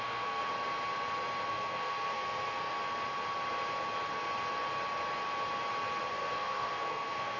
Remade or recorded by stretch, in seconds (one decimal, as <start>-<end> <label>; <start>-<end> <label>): 0.0-0.5 remade; 0.5-1.5 recorded; 1.5-2.7 remade; 2.7-6.1 recorded; 6.1-7.4 remade